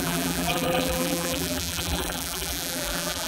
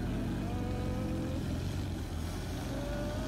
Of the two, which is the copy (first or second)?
first